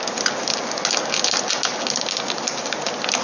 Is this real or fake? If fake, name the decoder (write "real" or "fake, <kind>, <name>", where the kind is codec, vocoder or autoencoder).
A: real